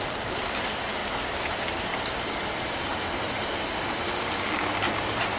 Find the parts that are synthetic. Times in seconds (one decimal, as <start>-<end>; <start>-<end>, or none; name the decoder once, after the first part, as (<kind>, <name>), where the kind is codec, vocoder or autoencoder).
none